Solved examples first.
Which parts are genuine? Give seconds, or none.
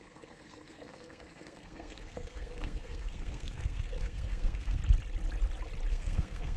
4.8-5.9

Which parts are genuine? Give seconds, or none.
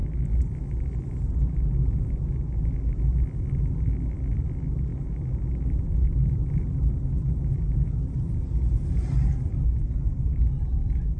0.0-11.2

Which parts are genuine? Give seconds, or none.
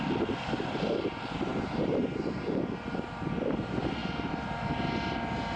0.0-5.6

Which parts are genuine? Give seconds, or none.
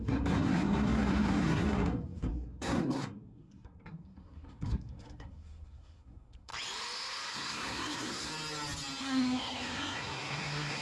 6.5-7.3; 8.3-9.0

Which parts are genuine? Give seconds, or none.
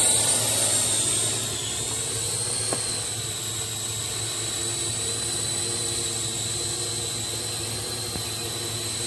0.0-9.1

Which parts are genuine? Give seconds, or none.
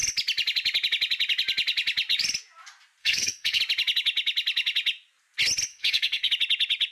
0.0-3.0; 3.6-5.7; 6.3-6.9